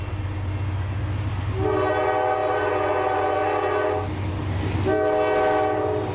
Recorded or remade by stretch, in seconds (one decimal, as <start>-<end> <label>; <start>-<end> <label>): 0.0-6.1 recorded